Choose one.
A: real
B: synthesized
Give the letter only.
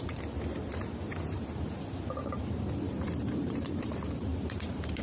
B